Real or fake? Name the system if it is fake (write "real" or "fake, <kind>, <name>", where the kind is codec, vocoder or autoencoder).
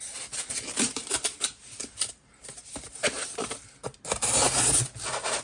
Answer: real